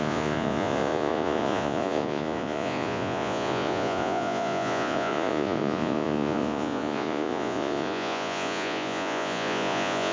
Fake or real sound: fake